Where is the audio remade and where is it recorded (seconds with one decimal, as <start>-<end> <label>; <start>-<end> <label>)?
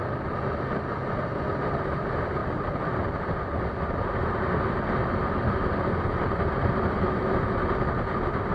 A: 0.0-8.5 recorded